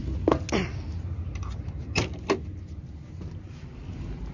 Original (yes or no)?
yes